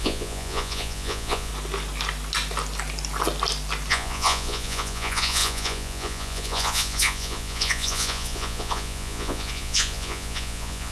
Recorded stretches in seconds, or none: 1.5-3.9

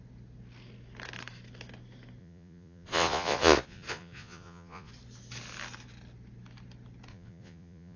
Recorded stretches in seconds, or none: 0.0-2.2; 4.9-7.1

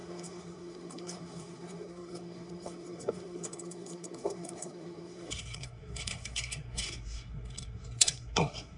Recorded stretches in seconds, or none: none

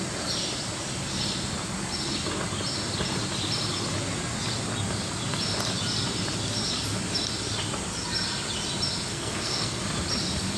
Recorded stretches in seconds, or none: 0.0-9.1; 9.8-10.6